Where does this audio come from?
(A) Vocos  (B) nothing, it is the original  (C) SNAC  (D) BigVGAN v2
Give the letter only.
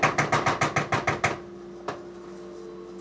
B